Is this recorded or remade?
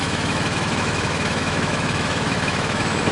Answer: remade